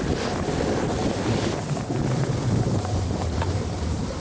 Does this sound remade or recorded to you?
recorded